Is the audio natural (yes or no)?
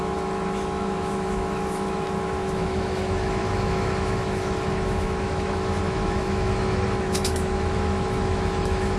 no